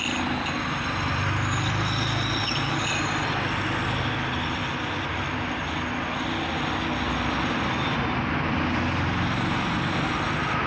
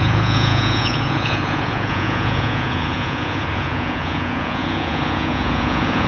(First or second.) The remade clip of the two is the second